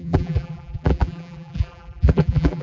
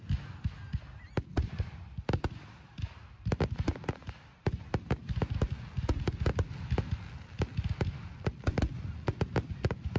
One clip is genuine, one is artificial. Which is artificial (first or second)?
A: first